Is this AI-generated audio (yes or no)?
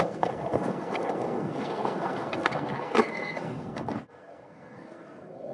yes